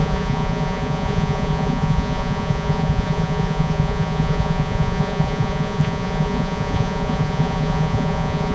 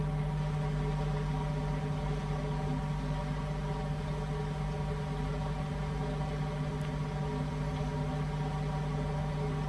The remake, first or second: first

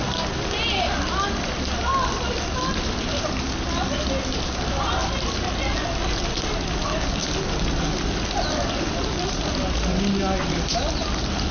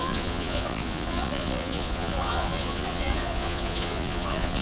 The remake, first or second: second